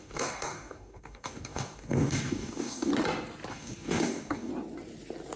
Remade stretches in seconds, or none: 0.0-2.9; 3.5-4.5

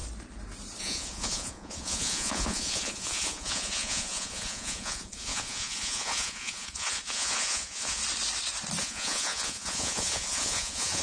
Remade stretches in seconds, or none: 0.8-8.0; 8.8-11.0

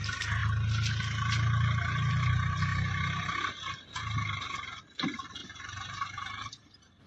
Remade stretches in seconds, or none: 2.7-3.3; 5.4-6.2

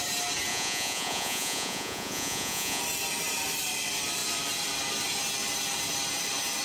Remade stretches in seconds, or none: 0.5-2.8

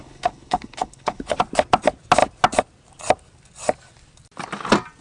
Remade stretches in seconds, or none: 0.0-1.4

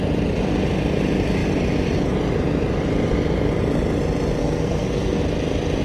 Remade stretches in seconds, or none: 4.4-5.2

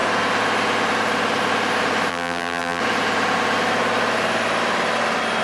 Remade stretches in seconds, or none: 2.1-2.8

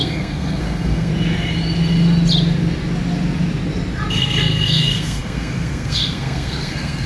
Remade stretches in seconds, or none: 0.0-1.1; 4.1-7.1